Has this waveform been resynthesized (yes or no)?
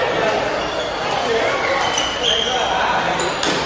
no